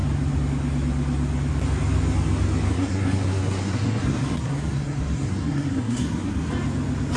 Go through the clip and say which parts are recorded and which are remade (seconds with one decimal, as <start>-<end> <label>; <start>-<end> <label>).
0.0-2.7 recorded; 2.7-6.5 remade; 6.5-7.2 recorded